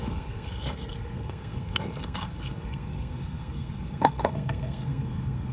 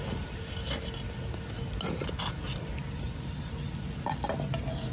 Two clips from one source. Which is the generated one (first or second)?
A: first